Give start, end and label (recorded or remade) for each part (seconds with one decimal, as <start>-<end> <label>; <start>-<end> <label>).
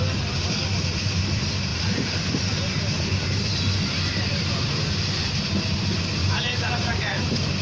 0.0-1.7 recorded; 1.7-4.8 remade; 4.8-7.6 recorded